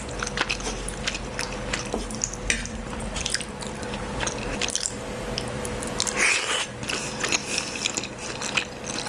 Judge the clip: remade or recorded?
recorded